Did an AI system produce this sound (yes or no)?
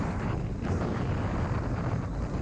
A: no